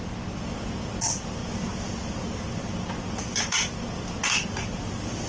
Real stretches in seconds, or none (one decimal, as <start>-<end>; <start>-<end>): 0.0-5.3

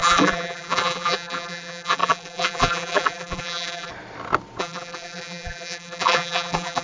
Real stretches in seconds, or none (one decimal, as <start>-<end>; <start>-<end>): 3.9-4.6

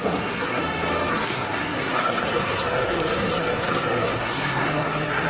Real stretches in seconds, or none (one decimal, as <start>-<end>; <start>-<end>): 0.6-1.1